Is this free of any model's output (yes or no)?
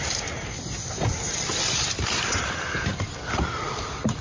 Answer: no